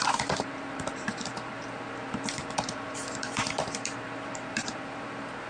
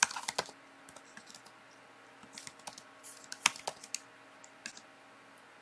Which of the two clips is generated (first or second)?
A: first